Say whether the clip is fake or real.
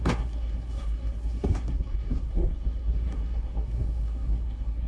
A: fake